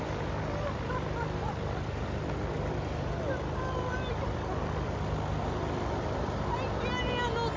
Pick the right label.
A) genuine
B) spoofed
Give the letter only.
A